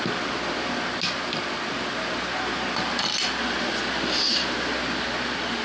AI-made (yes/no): no